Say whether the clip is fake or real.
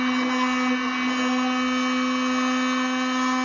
real